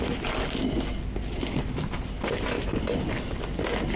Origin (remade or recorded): recorded